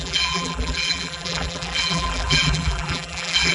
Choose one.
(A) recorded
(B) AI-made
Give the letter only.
B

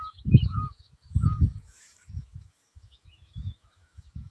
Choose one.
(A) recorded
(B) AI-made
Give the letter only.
B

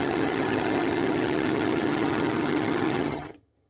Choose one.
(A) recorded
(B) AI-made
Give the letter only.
B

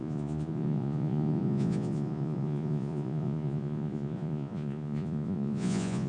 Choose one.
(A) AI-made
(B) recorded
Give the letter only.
A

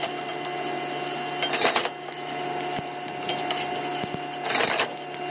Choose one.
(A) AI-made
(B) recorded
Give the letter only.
B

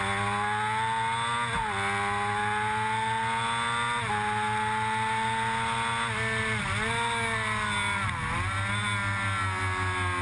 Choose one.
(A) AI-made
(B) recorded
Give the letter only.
B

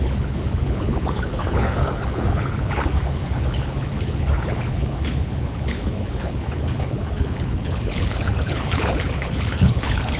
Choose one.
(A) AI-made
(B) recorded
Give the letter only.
A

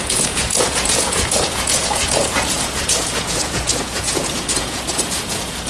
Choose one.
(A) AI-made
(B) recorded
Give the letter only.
A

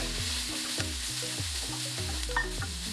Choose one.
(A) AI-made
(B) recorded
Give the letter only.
B